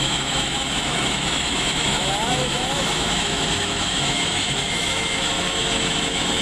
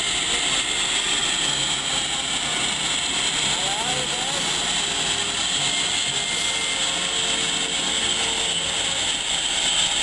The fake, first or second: first